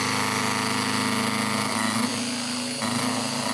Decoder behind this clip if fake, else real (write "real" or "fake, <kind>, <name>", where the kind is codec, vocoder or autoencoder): real